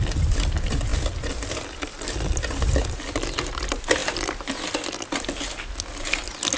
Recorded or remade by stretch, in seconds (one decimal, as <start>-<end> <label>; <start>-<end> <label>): 0.0-0.9 recorded; 0.9-1.5 remade; 1.5-1.9 recorded; 1.9-2.4 remade; 2.4-6.6 recorded